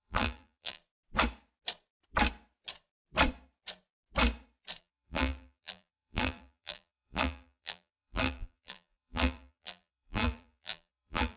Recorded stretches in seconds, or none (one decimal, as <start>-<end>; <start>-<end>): 0.8-4.8